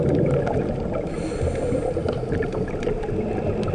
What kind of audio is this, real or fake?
real